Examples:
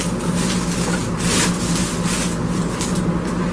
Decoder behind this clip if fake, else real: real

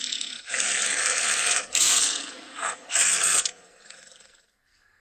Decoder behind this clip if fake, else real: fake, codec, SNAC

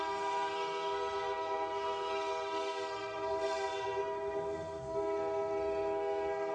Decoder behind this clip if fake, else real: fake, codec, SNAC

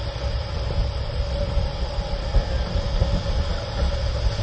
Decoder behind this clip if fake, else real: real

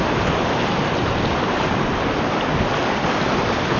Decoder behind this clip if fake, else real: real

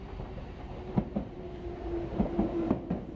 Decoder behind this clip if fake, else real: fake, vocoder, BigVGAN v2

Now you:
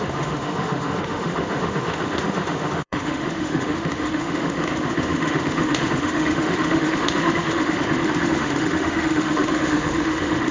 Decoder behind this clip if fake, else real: fake, autoencoder, DAC-VAE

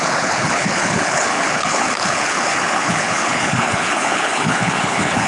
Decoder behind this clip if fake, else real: fake, codec, HILCodec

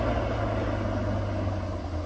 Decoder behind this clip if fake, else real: real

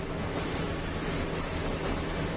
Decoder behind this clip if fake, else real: real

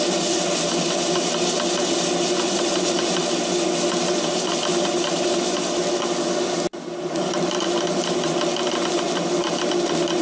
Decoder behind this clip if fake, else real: real